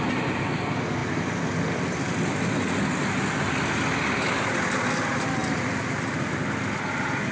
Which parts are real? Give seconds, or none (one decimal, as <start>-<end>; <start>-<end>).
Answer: 0.0-7.3